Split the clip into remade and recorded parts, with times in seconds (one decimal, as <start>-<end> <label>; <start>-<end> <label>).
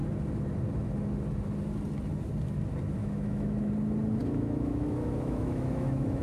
0.0-3.0 recorded; 3.0-3.7 remade; 3.7-4.2 recorded; 4.2-6.2 remade